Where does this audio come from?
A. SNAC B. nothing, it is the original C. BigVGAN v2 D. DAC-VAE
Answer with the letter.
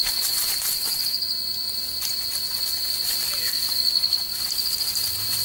B